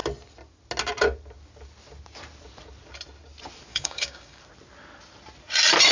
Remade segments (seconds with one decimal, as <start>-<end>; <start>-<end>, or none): 3.7-4.4